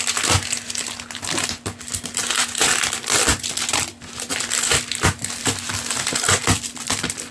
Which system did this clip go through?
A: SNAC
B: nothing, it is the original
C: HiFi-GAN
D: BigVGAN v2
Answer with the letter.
B